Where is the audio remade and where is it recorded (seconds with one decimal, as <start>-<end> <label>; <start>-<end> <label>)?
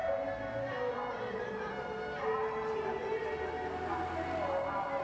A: 0.0-5.0 recorded